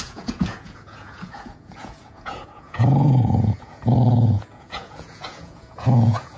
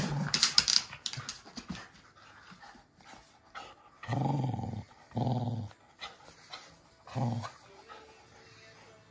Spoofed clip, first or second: first